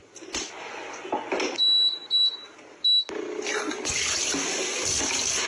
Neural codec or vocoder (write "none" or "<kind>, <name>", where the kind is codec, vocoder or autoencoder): none